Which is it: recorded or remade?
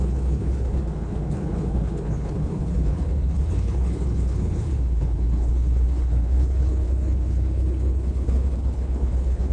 remade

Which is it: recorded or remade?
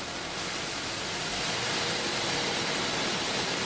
recorded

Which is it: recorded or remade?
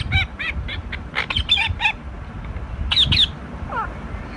recorded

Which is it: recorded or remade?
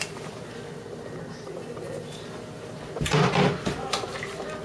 recorded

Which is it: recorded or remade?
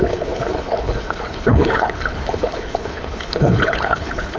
remade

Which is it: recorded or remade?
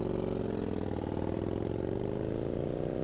recorded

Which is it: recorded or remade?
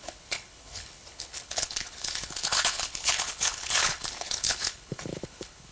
remade